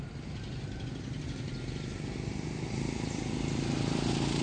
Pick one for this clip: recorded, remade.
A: recorded